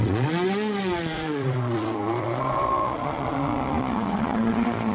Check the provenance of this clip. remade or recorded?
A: remade